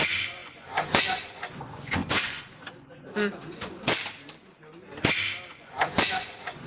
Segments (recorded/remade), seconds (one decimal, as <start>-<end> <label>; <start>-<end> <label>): 0.0-4.0 remade; 4.0-5.5 recorded; 5.5-6.7 remade